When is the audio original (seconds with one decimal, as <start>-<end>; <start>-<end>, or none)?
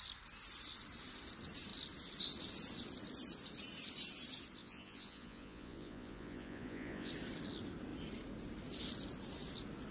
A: 0.0-4.6; 7.1-9.9